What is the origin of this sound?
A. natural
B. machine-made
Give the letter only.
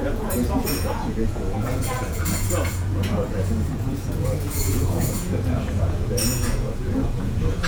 B